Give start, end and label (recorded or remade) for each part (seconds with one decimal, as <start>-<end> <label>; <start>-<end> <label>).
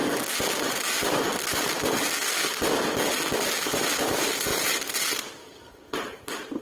0.0-4.5 recorded; 4.5-5.3 remade; 5.3-6.6 recorded